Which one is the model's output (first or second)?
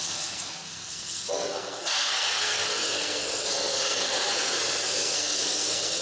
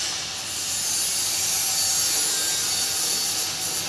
first